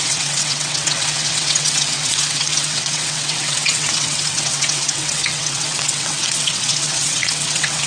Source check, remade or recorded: remade